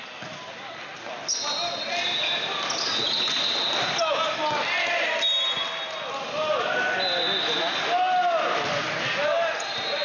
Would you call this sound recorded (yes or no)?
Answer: yes